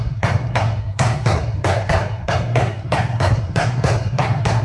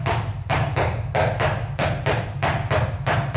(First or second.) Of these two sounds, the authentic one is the second